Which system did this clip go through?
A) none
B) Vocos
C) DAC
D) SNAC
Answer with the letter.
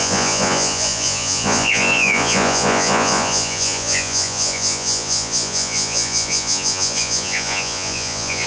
B